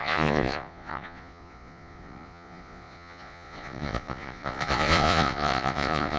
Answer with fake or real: fake